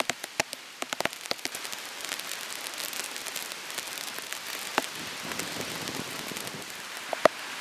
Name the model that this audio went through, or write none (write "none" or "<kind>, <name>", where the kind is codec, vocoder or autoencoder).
none